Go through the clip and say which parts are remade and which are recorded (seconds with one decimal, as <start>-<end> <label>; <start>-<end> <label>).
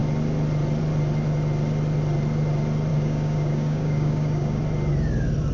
0.0-2.9 recorded; 2.9-4.6 remade; 4.6-5.5 recorded